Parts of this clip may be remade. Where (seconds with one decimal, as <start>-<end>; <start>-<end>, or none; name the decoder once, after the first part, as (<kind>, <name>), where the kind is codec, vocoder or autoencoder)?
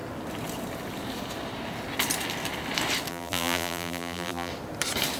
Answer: 3.1-4.5 (vocoder, BigVGAN v2)